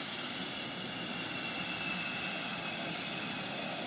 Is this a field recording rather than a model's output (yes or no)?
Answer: yes